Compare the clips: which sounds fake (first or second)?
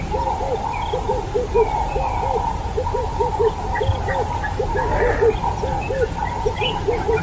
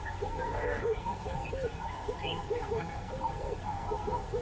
second